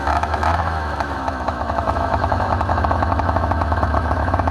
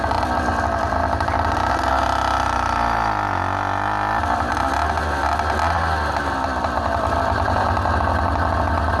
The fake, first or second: first